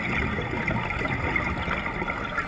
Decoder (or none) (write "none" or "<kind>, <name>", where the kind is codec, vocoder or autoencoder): none